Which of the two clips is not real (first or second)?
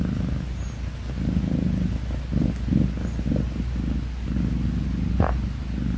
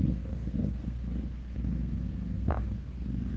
second